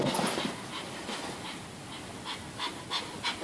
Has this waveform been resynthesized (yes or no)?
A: no